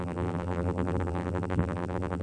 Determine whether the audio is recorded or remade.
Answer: remade